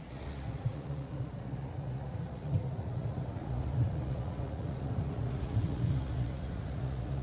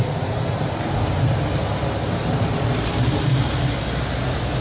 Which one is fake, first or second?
first